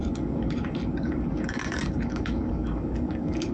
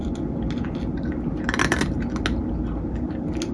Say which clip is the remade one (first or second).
first